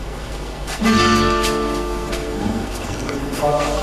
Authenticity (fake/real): fake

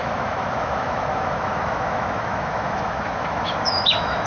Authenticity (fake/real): fake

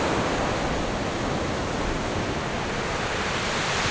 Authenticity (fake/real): real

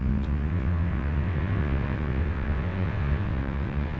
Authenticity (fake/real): fake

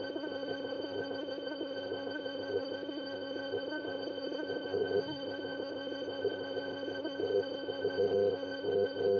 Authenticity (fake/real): fake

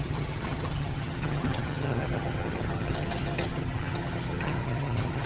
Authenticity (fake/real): fake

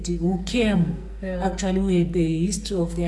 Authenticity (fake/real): fake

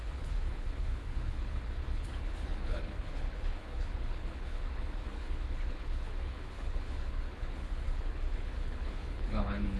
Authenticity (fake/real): fake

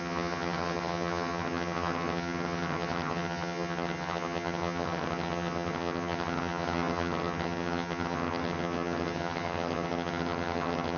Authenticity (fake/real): fake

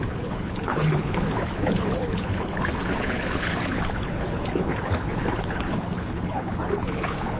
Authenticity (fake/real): fake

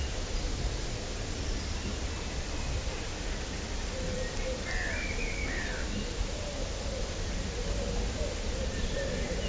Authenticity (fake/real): real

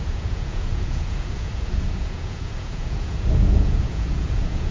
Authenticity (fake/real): fake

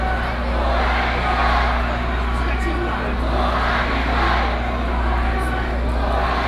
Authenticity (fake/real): real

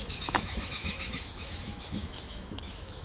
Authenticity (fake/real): fake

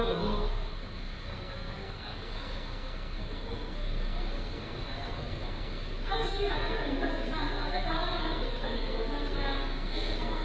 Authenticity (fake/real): fake